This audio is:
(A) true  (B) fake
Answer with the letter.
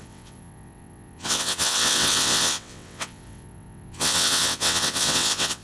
B